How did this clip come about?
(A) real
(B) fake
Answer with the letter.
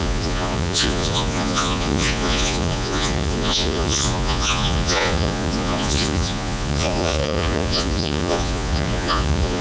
B